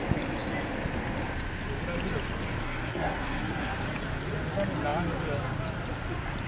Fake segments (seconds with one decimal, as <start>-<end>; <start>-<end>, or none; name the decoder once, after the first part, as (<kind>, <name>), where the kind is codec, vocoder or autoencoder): 2.6-3.7 (codec, SNAC)